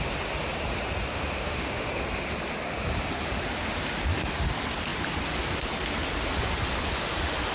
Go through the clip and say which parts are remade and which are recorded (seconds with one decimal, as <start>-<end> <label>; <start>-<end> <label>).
0.0-1.1 recorded; 1.1-1.9 remade; 1.9-7.5 recorded